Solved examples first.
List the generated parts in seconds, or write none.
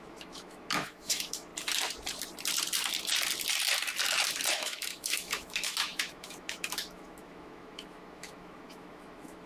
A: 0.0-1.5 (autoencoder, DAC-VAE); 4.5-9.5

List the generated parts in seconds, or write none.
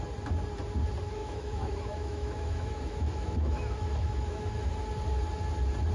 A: 1.2-4.7 (autoencoder, DAC-VAE)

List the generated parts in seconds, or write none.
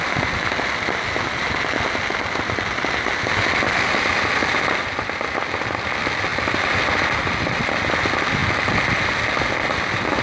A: none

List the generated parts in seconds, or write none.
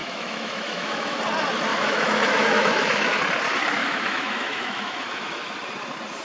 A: 0.0-1.2 (autoencoder, DAC-VAE); 1.7-3.2; 3.8-5.5